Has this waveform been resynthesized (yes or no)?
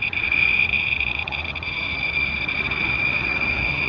yes